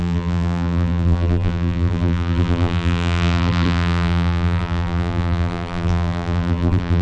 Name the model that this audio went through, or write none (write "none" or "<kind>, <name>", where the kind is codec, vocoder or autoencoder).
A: vocoder, BigVGAN v2